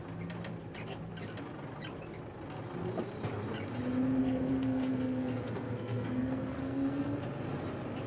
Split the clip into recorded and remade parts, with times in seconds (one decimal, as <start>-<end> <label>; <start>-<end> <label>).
0.0-4.2 recorded; 4.2-7.2 remade; 7.2-8.1 recorded